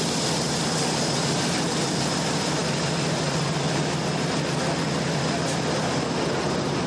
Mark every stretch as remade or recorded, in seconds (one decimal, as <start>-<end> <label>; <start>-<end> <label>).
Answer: 0.0-6.9 recorded